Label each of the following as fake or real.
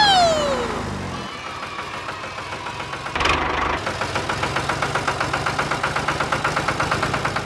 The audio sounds real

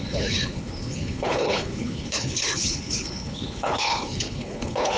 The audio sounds fake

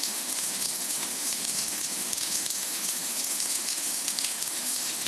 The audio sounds fake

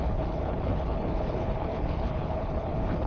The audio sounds fake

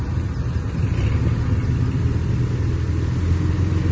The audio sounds real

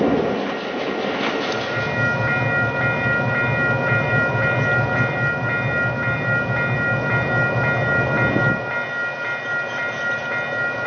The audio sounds real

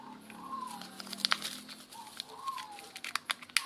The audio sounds real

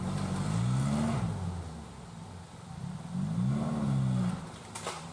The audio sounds real